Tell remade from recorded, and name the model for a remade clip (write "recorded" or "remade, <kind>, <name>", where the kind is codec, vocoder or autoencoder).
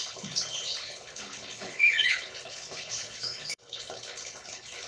remade, codec, HILCodec